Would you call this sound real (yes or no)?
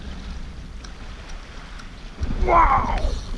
yes